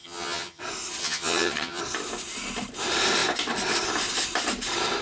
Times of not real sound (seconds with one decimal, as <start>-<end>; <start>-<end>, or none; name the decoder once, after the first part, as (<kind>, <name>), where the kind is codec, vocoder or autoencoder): 0.0-0.6 (vocoder, HiFi-GAN); 1.0-1.8